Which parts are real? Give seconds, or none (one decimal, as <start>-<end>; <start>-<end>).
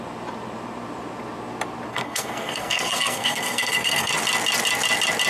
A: 0.0-1.9; 4.1-5.3